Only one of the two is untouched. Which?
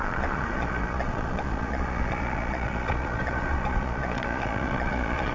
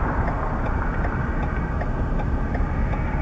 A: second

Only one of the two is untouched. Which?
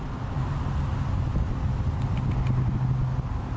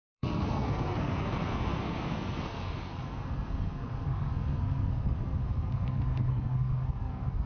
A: first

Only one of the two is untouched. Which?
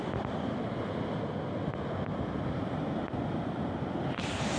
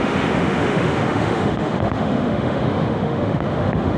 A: first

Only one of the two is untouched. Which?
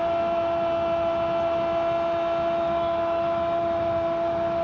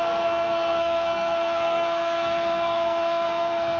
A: first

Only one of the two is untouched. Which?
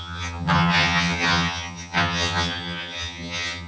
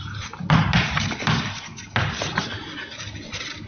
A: second